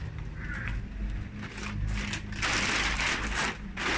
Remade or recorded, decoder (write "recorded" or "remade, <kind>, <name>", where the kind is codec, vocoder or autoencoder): recorded